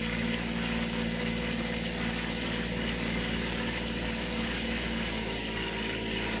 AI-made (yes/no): yes